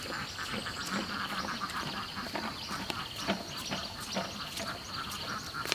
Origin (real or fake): real